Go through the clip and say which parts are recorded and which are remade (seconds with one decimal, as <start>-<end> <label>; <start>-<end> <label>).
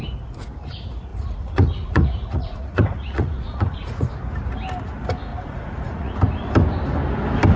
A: 0.0-1.1 recorded; 1.1-4.1 remade; 4.1-5.3 recorded; 5.3-6.1 remade; 6.1-7.6 recorded